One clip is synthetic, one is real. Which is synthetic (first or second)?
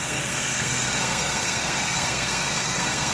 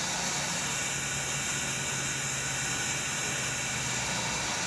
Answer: first